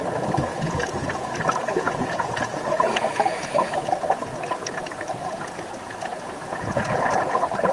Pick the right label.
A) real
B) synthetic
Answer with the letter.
B